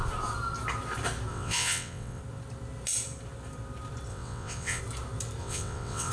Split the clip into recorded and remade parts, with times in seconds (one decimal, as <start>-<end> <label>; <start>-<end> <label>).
0.0-1.3 recorded; 1.3-2.2 remade; 2.2-4.1 recorded; 4.1-4.8 remade; 4.8-5.4 recorded; 5.4-6.1 remade